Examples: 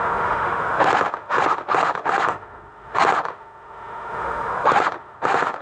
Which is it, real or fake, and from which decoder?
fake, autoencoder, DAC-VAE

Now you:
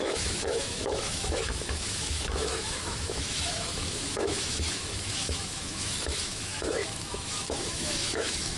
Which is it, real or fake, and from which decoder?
fake, autoencoder, DAC-VAE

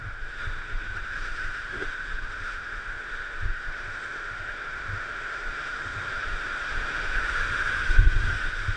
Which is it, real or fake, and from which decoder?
fake, autoencoder, DAC-VAE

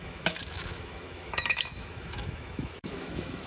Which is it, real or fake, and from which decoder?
fake, autoencoder, DAC-VAE